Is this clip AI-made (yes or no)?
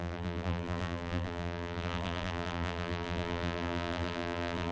yes